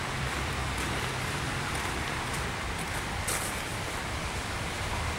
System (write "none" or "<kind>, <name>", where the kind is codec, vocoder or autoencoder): vocoder, BigVGAN v2